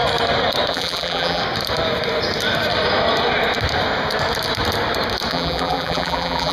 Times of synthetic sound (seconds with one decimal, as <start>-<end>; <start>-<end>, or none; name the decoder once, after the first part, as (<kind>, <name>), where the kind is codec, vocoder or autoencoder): 0.7-1.4 (vocoder, BigVGAN v2); 5.3-6.5